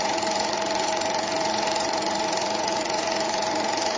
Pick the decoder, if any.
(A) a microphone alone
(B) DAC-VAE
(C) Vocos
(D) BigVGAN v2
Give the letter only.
C